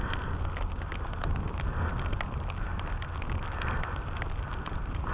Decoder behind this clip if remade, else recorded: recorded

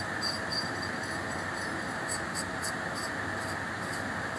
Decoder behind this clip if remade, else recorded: recorded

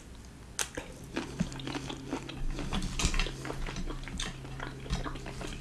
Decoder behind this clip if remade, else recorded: recorded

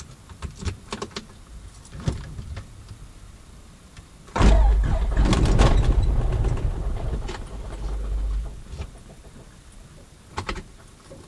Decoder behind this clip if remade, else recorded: recorded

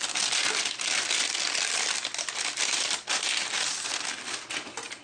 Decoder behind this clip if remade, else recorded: recorded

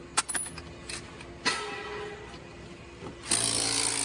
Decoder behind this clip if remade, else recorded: recorded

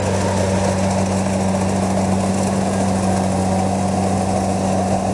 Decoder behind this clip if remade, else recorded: recorded